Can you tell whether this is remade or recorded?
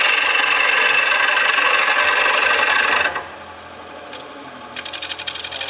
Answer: recorded